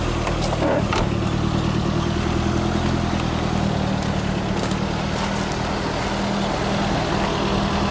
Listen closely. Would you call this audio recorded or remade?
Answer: recorded